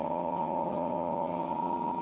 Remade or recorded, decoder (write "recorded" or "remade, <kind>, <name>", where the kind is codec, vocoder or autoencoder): remade, vocoder, HiFi-GAN